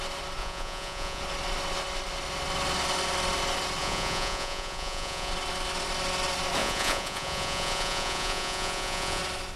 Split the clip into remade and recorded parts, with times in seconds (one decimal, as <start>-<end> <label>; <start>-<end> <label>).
0.0-0.4 recorded; 0.4-1.2 remade; 1.2-3.8 recorded; 3.8-5.3 remade; 5.3-6.6 recorded; 6.6-9.2 remade; 9.2-9.6 recorded